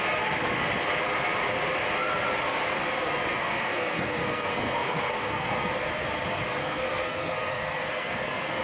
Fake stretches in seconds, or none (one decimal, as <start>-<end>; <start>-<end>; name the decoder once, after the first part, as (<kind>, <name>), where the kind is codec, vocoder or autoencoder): 3.4-5.7 (codec, SNAC); 6.6-8.6